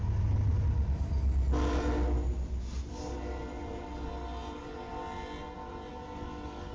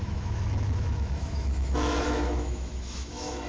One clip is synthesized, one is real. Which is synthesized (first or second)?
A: second